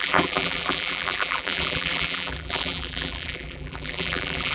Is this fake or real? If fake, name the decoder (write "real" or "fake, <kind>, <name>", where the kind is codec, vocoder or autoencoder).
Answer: fake, vocoder, BigVGAN v2